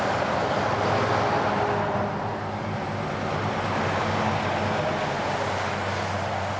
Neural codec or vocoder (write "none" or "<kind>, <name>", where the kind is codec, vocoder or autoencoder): none